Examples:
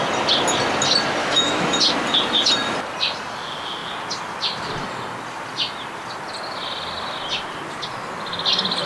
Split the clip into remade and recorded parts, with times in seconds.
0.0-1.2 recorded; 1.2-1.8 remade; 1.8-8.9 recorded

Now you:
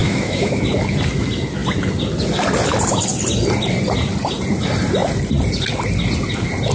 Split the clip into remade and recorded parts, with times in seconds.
0.0-0.6 remade; 0.6-6.7 recorded

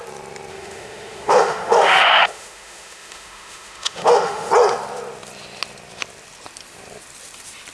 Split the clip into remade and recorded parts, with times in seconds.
0.0-0.5 recorded; 0.5-4.5 remade; 4.5-7.7 recorded

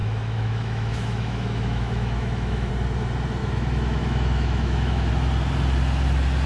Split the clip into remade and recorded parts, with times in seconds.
0.0-2.7 remade; 2.7-3.4 recorded; 3.4-5.1 remade; 5.1-6.5 recorded

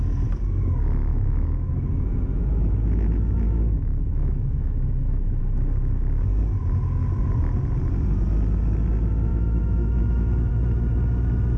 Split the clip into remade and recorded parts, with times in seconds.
0.0-1.1 recorded; 1.1-5.4 remade; 5.4-9.3 recorded; 9.3-10.5 remade; 10.5-11.6 recorded

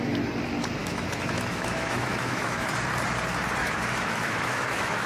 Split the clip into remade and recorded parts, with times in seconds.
0.0-0.8 recorded; 0.8-2.7 remade; 2.7-3.6 recorded; 3.6-5.1 remade